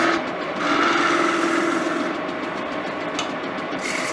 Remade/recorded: recorded